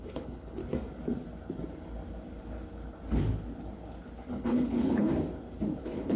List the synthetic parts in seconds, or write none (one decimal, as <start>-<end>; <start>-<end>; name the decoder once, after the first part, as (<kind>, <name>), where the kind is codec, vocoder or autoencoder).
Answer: 0.0-0.6 (codec, HILCodec); 4.3-5.1; 5.8-6.2